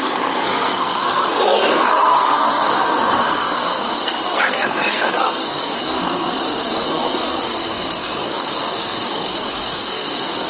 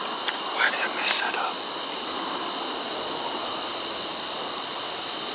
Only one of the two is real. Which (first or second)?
second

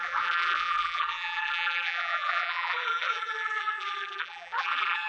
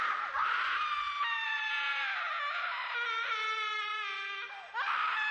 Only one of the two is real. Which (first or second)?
second